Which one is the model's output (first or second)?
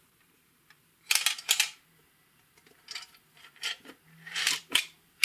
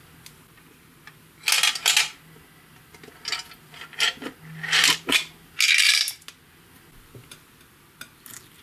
first